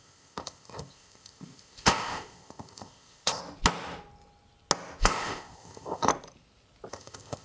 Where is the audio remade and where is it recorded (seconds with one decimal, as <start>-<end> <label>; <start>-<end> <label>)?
0.0-3.4 remade; 3.4-5.0 recorded; 5.0-6.1 remade; 6.1-6.9 recorded; 6.9-7.4 remade